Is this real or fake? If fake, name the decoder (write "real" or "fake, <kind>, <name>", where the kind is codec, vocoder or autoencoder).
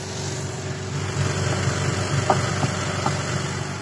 real